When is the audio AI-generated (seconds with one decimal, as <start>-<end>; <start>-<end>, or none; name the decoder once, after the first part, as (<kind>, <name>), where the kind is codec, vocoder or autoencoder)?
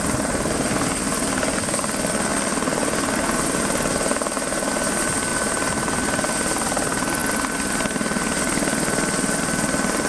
none